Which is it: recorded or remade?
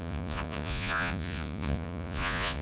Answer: remade